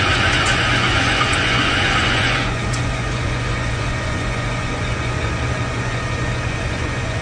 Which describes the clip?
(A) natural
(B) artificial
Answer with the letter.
B